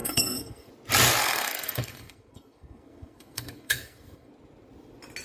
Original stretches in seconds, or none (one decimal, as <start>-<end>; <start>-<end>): 0.7-1.2; 4.3-5.2